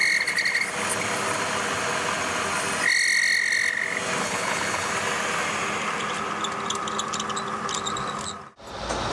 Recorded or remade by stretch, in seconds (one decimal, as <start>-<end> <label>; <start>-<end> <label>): 0.0-4.2 recorded; 4.2-4.9 remade; 4.9-9.1 recorded